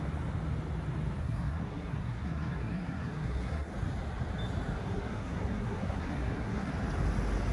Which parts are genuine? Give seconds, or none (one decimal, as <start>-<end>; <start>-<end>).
0.0-1.2; 3.7-4.8; 6.7-7.5